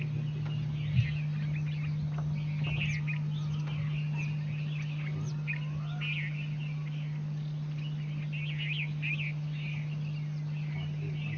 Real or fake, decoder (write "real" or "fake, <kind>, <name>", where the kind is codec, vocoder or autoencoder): real